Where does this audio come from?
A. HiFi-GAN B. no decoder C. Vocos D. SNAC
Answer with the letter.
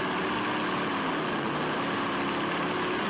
B